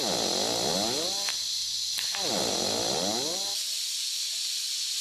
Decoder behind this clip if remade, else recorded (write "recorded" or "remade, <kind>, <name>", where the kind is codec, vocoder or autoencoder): recorded